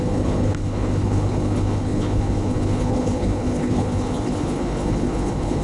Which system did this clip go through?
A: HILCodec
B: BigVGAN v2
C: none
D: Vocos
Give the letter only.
A